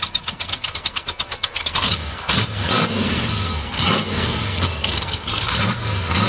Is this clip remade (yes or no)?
yes